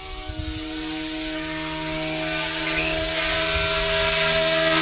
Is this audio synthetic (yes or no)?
no